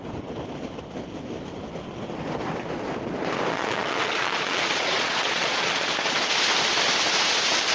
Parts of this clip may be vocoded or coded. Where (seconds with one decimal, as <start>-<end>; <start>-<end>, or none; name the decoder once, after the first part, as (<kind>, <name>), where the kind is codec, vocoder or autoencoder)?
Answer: 3.5-5.9 (vocoder, Vocos)

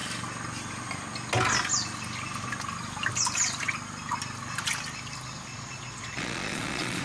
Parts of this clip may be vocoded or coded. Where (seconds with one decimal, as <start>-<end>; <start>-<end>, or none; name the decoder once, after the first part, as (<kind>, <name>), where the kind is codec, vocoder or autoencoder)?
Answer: 5.5-7.0 (vocoder, Vocos)

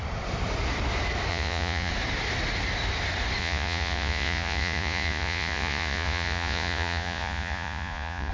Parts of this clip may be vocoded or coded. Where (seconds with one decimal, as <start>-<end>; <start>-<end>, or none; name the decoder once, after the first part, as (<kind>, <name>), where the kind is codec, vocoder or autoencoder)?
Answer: 1.3-1.9 (vocoder, Vocos); 3.4-8.3

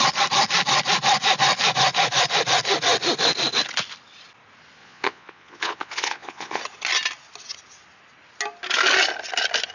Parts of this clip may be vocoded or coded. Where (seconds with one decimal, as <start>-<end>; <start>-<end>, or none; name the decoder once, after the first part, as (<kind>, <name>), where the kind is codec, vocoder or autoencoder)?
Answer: 4.8-6.6 (vocoder, Vocos)

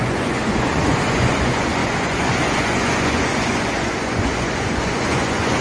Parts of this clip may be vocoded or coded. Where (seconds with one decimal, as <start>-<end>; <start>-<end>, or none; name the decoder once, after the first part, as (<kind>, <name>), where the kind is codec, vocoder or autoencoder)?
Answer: 0.0-5.6 (vocoder, Vocos)

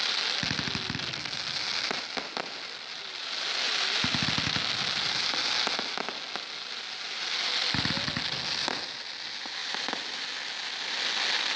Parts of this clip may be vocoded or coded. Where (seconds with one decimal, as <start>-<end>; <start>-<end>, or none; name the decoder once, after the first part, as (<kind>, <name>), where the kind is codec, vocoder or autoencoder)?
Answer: none